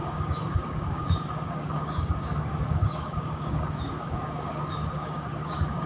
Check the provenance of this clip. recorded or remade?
remade